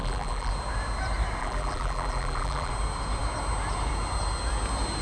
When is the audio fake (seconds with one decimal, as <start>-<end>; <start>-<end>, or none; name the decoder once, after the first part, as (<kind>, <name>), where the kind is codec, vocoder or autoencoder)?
0.0-0.5 (vocoder, BigVGAN v2); 1.4-2.7